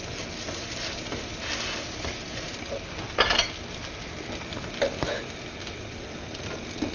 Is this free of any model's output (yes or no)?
yes